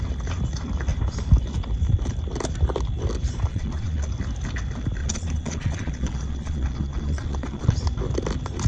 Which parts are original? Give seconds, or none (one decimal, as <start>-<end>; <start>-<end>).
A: 0.0-3.5; 4.1-5.0; 7.7-8.7